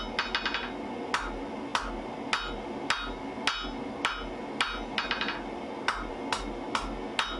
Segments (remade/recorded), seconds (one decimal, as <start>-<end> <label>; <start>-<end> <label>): 0.0-7.4 recorded